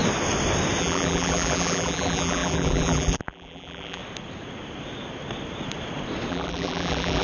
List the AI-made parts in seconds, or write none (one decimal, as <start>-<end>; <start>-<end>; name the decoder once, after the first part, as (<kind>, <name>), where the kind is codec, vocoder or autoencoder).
0.8-4.0 (vocoder, BigVGAN v2); 6.3-7.2

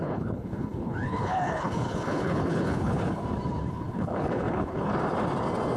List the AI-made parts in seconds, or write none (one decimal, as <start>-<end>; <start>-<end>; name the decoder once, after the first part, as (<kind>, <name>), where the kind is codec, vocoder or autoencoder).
0.0-3.2 (codec, HILCodec); 3.7-4.9